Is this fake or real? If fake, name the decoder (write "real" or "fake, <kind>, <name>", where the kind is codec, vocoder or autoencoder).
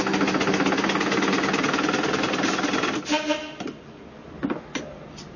real